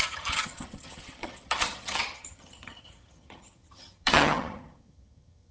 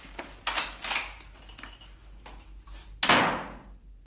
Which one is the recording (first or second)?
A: second